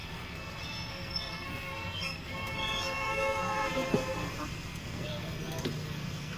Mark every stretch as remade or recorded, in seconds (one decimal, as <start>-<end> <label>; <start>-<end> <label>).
0.0-6.4 remade